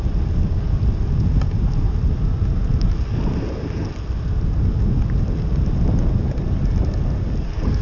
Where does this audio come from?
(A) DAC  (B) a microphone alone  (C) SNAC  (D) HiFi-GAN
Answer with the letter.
B